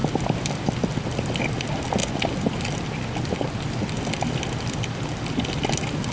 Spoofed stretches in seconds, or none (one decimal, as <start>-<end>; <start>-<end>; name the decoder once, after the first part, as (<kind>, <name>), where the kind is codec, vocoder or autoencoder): none